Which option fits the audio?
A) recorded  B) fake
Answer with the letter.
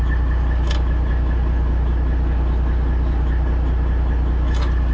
A